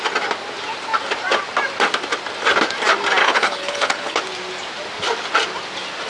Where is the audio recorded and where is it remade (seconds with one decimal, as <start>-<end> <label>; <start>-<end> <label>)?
0.0-3.2 recorded; 3.2-4.2 remade; 4.2-6.1 recorded